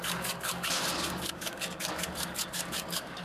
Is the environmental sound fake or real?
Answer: fake